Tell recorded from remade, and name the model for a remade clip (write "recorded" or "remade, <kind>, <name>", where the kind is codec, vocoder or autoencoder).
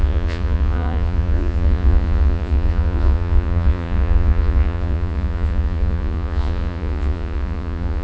remade, vocoder, Vocos